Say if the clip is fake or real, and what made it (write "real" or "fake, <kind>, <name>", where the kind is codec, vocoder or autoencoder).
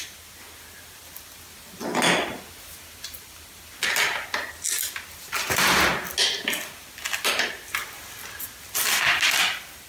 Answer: real